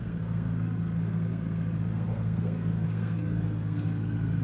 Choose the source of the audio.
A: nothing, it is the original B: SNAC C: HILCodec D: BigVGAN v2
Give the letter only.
B